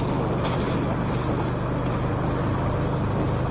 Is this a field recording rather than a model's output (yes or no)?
yes